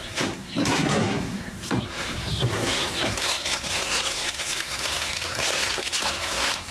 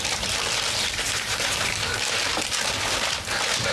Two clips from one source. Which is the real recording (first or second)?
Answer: second